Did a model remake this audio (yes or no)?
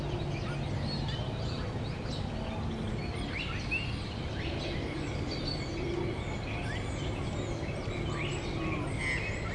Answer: no